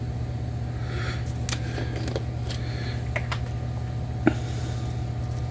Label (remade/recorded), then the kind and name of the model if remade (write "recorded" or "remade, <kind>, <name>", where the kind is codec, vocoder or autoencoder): recorded